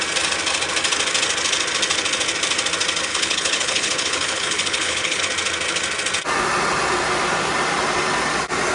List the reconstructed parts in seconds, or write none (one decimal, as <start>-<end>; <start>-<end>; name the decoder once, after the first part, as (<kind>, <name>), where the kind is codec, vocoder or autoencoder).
3.1-5.2 (codec, HILCodec)